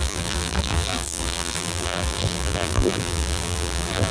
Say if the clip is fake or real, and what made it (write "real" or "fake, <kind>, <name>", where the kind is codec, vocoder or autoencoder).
fake, vocoder, BigVGAN v2